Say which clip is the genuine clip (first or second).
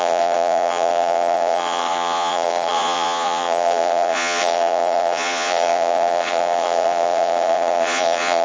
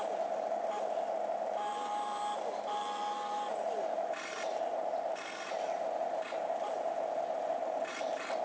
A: second